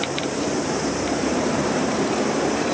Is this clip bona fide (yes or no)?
no